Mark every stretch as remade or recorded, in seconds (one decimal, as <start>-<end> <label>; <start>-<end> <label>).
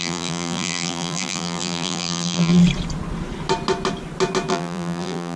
0.0-2.6 remade; 2.6-4.5 recorded; 4.5-5.4 remade